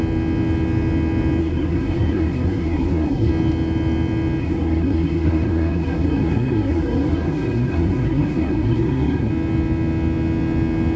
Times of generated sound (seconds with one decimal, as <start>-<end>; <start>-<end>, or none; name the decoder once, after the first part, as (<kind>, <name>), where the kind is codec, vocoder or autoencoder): 1.4-3.3 (codec, SNAC); 4.4-9.3